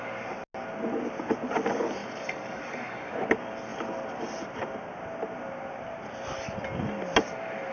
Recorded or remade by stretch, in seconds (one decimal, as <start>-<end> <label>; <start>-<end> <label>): 0.0-2.0 recorded; 2.0-3.1 remade; 3.1-7.7 recorded